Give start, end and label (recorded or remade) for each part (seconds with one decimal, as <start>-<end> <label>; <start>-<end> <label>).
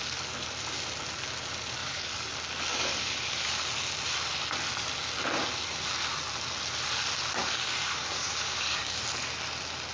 0.0-1.8 recorded; 1.8-2.3 remade; 2.3-2.7 recorded; 2.7-3.5 remade; 3.5-7.4 recorded; 7.4-9.0 remade; 9.0-9.9 recorded